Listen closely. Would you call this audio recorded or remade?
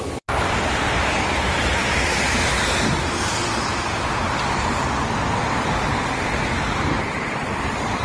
recorded